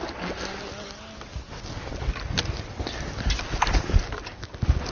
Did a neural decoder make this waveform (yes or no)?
no